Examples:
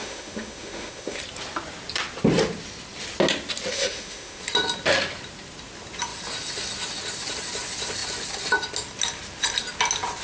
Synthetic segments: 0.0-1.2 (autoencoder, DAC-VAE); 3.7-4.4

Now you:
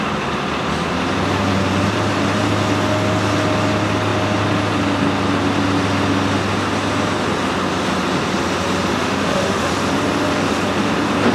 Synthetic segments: 8.9-9.7 (autoencoder, DAC-VAE)

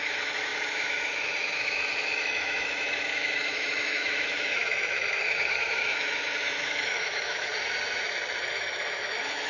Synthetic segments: 0.0-7.5 (autoencoder, DAC-VAE); 8.4-9.5